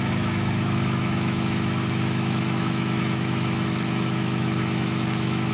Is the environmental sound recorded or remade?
remade